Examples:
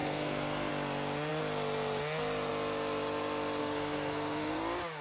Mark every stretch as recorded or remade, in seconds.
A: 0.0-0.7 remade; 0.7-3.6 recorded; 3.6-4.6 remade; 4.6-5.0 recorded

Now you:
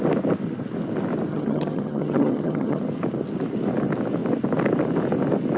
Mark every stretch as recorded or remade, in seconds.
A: 0.0-1.3 recorded; 1.3-2.8 remade; 2.8-5.6 recorded

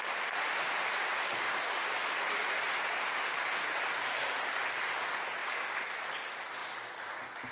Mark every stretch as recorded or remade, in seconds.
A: 0.0-2.4 recorded; 2.4-3.5 remade; 3.5-5.4 recorded; 5.4-6.1 remade; 6.1-7.5 recorded

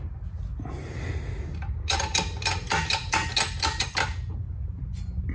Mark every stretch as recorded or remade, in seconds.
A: 0.0-5.3 recorded

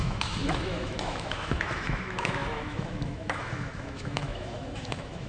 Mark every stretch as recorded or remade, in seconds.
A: 0.0-5.3 remade

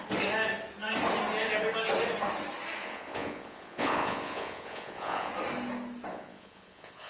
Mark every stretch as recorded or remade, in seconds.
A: 0.0-2.8 recorded; 2.8-5.3 remade; 5.3-6.1 recorded; 6.1-7.1 remade

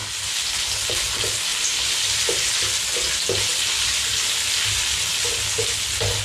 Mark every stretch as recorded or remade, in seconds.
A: 0.0-0.6 remade; 0.6-1.5 recorded; 1.5-2.7 remade; 2.7-6.2 recorded

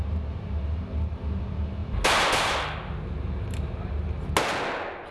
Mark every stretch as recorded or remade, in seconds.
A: 0.0-5.1 recorded